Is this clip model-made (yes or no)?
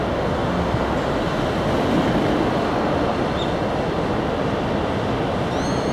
no